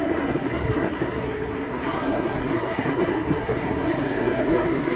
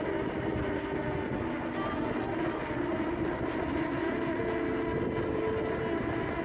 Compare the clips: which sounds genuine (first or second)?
second